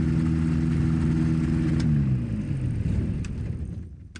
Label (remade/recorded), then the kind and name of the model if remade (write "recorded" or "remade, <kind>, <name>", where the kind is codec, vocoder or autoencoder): recorded